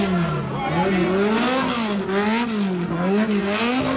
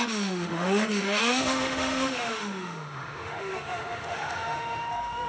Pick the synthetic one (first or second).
second